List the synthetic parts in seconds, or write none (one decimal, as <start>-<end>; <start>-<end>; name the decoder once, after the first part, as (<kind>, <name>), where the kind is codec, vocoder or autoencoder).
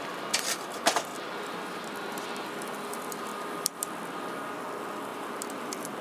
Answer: 3.3-4.0 (vocoder, BigVGAN v2); 5.1-6.0